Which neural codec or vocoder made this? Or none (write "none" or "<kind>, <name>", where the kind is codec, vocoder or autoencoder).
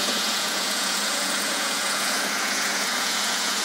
vocoder, Vocos